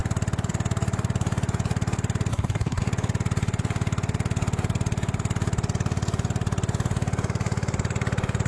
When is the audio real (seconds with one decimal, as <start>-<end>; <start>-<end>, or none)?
0.0-2.3; 2.8-8.5